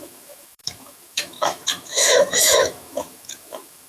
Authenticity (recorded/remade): remade